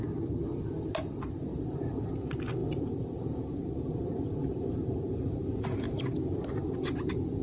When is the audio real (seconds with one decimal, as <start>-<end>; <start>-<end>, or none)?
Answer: 0.0-1.5; 2.1-2.6; 7.0-7.4